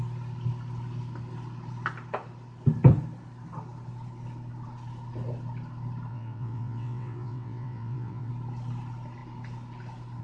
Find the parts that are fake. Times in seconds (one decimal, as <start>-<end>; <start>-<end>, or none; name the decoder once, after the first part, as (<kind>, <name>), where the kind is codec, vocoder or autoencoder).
6.1-8.3 (vocoder, WaveNeXt)